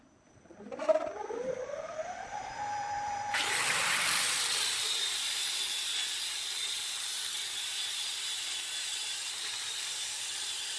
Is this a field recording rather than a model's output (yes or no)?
no